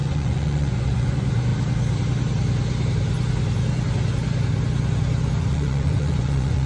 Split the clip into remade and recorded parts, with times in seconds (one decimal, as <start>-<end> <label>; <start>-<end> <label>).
0.0-1.5 remade; 1.5-5.4 recorded; 5.4-6.7 remade